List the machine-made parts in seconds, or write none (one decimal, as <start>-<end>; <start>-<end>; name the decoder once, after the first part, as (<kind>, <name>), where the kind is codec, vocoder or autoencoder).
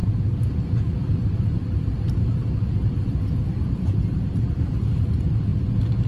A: 0.0-5.5 (vocoder, BigVGAN v2)